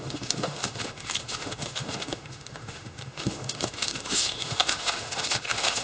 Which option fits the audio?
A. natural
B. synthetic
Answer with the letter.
B